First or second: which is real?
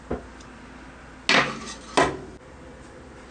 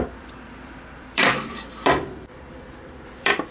first